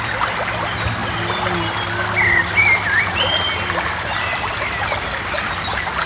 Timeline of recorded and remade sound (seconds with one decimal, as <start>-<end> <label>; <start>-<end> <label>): 0.0-6.1 recorded

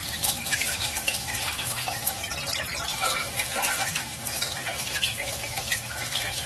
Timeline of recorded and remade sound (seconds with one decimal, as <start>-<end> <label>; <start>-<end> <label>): 0.0-2.2 remade; 2.2-2.9 recorded; 2.9-6.5 remade

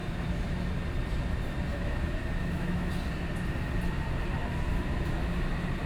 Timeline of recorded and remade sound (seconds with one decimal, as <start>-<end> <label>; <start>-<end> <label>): 0.0-0.6 remade; 0.6-1.7 recorded; 1.7-2.9 remade; 2.9-5.9 recorded

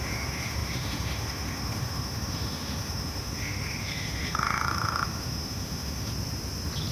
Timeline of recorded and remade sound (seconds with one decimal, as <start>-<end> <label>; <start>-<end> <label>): 0.0-6.1 remade; 6.1-6.9 recorded

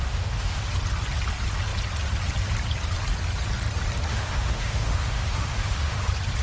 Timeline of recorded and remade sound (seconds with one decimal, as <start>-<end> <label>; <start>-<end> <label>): 0.0-0.6 remade; 0.6-4.1 recorded; 4.1-6.0 remade; 6.0-6.4 recorded

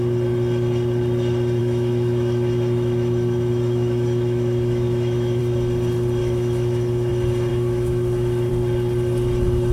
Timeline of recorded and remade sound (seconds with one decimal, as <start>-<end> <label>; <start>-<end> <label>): 0.0-1.6 recorded; 1.6-5.4 remade; 5.4-6.2 recorded; 6.2-7.1 remade; 7.1-7.5 recorded; 7.5-8.5 remade; 8.5-9.7 recorded

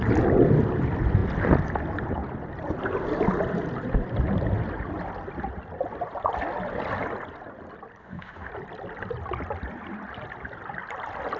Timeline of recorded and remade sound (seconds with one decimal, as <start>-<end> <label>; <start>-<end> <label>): 0.0-8.0 recorded; 8.0-8.5 remade; 8.5-11.4 recorded